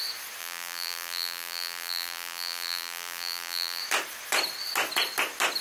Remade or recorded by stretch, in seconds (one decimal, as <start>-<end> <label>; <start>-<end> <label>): 0.0-0.4 recorded; 0.4-3.8 remade; 3.8-5.6 recorded